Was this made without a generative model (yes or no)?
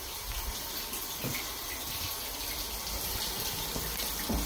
yes